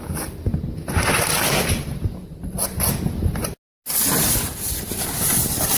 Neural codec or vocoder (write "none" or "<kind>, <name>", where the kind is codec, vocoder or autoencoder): none